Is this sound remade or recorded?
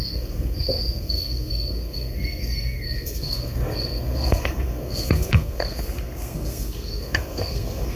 remade